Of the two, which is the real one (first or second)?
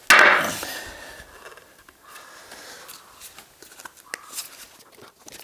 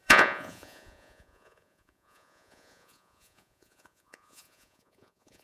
first